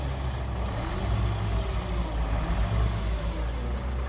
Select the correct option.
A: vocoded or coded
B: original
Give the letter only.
B